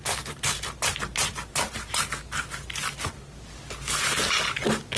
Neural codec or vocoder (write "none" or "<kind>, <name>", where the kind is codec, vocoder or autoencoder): none